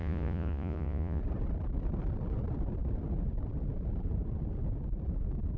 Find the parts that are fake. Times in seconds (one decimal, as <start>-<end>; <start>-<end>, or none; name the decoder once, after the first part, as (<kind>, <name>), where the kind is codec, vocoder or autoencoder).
0.0-1.2 (vocoder, Vocos)